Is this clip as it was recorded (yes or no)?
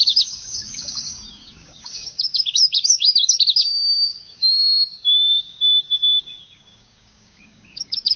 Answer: no